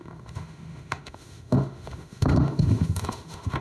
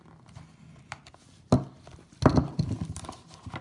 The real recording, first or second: second